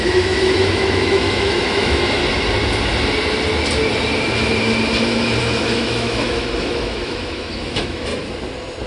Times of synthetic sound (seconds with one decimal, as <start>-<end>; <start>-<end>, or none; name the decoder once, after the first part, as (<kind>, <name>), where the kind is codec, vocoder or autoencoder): 0.0-2.2 (autoencoder, DAC-VAE); 5.4-8.1